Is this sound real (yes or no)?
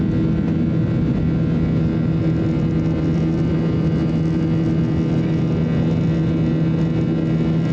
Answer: yes